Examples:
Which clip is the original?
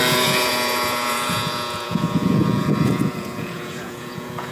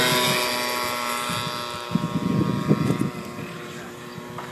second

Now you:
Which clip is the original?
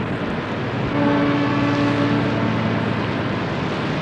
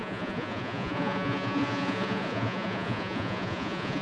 first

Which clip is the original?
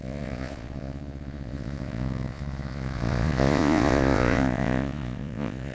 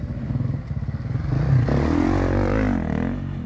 second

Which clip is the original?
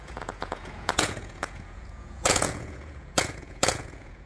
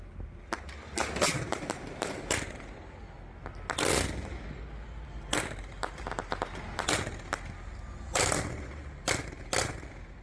second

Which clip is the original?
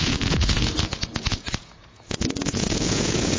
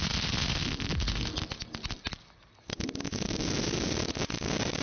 second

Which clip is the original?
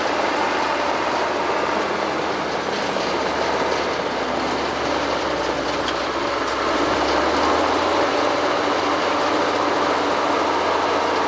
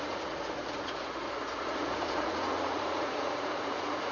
first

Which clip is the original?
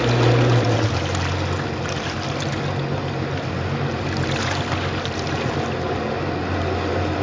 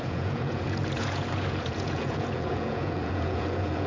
first